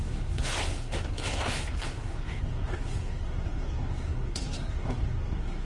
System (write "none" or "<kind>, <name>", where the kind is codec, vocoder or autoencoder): codec, SNAC